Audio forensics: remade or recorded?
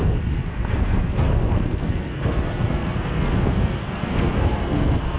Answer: remade